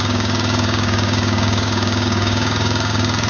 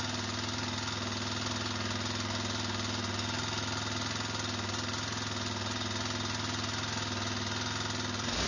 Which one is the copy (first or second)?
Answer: first